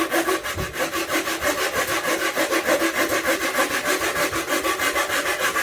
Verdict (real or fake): real